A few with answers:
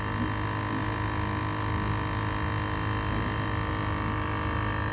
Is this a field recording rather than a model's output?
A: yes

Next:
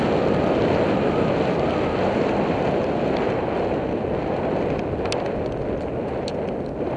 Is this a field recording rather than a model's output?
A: yes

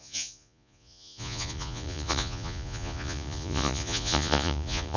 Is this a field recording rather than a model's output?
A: no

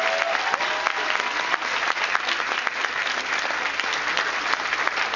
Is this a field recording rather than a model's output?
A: yes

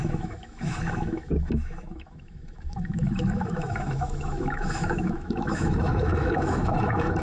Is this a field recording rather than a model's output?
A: no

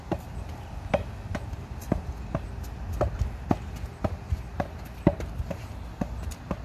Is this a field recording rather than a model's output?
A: yes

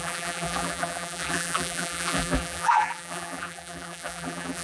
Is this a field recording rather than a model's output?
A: no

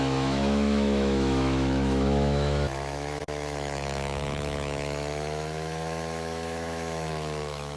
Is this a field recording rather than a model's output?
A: no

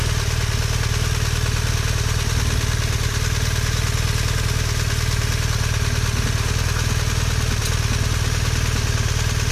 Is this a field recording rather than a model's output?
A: yes